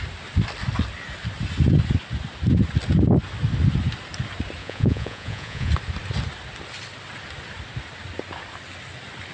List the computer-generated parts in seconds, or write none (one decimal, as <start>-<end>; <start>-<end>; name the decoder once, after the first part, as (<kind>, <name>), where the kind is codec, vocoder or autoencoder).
4.6-5.7 (vocoder, Vocos)